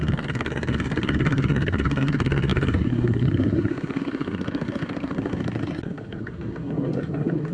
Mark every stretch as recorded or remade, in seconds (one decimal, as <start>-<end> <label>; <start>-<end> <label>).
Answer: 0.0-7.5 remade